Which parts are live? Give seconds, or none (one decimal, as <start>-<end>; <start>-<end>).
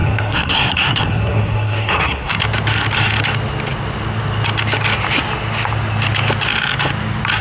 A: 2.4-7.4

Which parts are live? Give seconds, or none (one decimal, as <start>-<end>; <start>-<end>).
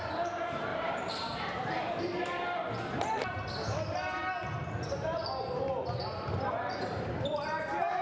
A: 2.6-6.7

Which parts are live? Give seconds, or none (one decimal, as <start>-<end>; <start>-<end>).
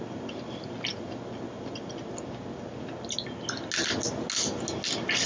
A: 0.0-5.3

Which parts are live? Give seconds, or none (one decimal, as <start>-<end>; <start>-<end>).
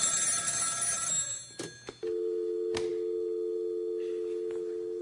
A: 0.0-5.0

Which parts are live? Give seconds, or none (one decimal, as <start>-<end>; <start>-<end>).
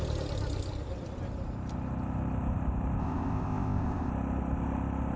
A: 0.0-3.0; 4.1-5.2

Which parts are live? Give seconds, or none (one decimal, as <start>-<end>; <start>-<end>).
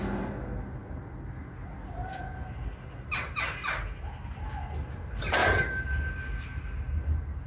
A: 0.0-7.5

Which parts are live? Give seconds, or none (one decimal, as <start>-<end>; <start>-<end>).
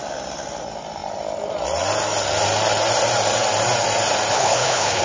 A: 0.0-4.3